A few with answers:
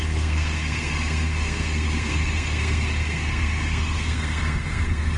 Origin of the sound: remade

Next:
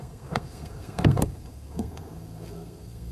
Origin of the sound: remade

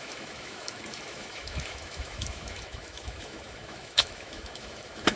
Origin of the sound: remade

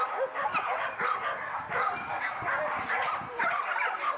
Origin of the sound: recorded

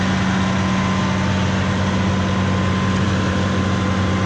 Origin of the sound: recorded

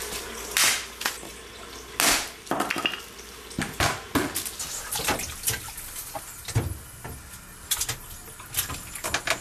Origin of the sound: recorded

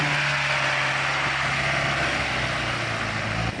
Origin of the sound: recorded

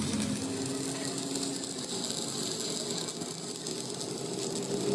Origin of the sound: recorded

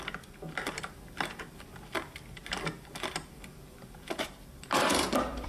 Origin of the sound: recorded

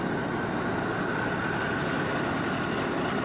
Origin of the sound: recorded